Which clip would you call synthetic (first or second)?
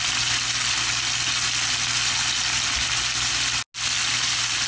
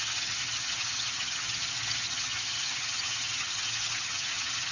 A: second